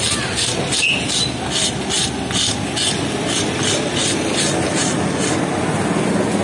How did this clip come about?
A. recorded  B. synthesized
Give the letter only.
A